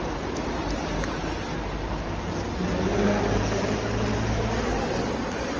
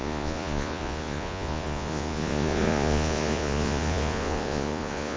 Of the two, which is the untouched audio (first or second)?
first